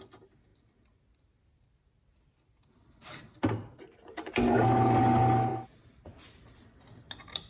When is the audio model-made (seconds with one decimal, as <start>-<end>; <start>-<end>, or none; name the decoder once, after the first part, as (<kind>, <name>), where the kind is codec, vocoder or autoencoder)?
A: none